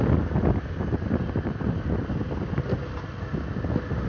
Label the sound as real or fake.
real